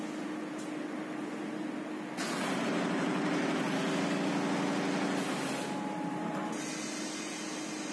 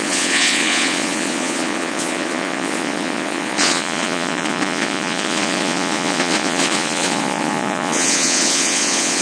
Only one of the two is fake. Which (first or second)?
second